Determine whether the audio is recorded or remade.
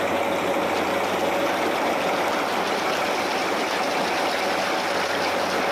recorded